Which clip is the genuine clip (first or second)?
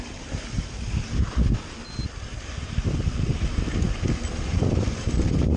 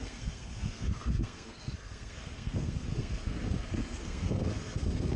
first